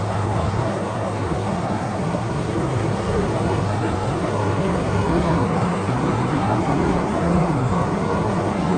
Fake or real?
fake